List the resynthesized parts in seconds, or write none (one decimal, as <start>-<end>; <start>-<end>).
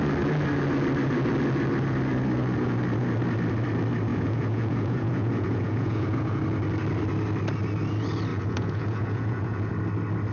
4.1-6.4; 8.3-9.7